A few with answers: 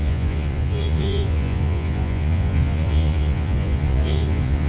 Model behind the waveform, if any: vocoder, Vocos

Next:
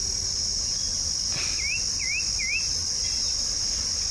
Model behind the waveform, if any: none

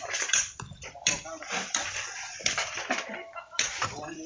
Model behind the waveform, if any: vocoder, BigVGAN v2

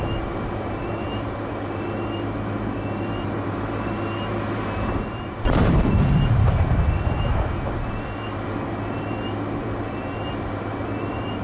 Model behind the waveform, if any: vocoder, BigVGAN v2